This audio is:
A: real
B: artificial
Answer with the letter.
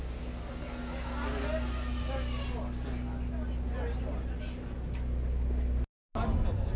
A